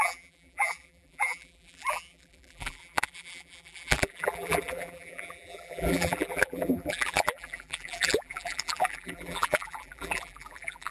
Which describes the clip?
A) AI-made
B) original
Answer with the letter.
A